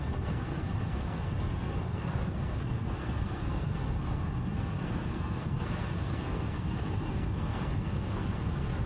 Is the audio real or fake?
fake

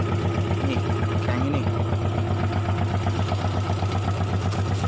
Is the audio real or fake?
real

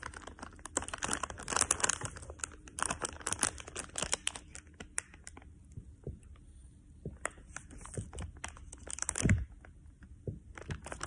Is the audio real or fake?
real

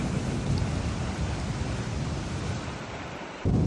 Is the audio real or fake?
real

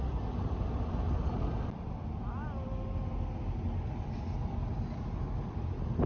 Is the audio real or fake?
real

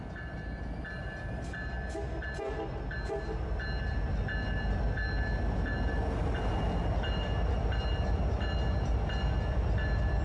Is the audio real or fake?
real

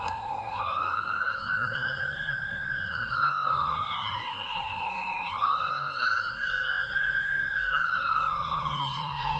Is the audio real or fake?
fake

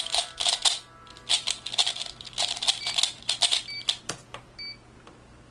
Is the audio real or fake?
real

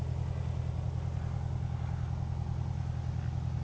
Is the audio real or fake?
real